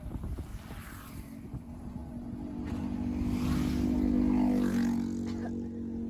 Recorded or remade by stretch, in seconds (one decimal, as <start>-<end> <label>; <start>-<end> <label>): 0.0-0.5 remade; 0.5-1.1 recorded; 1.1-2.0 remade; 2.0-6.1 recorded